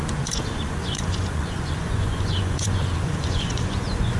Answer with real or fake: fake